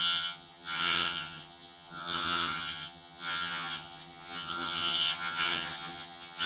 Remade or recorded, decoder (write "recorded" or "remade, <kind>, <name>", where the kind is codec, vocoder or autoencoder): remade, vocoder, HiFi-GAN